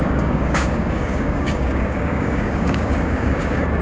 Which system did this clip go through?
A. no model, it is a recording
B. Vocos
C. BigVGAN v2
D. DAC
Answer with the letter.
D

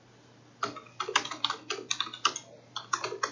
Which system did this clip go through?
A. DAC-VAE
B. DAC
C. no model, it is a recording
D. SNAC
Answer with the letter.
C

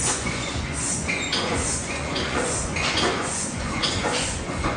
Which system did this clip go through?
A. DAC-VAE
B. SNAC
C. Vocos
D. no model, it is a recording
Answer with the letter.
C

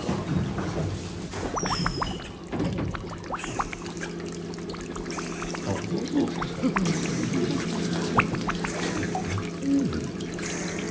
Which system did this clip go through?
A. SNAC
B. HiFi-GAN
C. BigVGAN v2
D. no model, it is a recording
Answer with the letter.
D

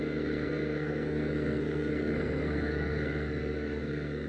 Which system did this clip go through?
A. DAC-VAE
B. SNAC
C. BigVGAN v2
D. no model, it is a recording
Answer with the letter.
B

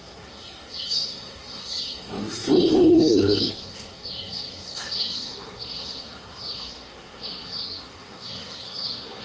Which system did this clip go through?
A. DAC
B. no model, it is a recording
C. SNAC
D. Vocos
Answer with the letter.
C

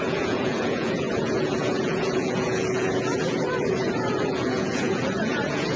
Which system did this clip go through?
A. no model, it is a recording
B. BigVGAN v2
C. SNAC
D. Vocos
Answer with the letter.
D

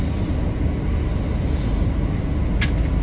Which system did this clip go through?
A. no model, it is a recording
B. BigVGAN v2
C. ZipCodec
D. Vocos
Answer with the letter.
A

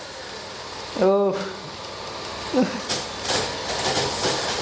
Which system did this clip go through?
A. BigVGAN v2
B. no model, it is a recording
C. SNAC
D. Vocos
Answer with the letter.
B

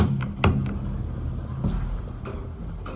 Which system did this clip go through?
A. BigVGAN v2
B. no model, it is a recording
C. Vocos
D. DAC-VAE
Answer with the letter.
B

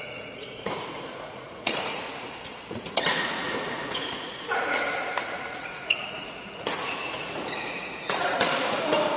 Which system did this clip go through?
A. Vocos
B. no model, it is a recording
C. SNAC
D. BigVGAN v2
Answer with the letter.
A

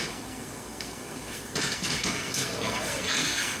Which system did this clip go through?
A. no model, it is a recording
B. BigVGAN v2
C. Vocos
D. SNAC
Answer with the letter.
D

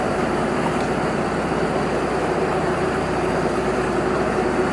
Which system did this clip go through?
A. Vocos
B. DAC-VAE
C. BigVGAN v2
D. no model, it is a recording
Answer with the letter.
D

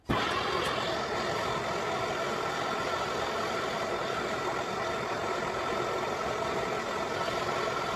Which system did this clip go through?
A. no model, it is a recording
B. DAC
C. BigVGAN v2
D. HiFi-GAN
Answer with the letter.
A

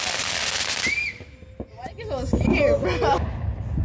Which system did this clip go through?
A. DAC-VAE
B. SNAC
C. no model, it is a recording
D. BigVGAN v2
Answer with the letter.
C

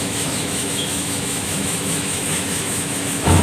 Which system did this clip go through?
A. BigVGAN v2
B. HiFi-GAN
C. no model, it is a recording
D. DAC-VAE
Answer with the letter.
D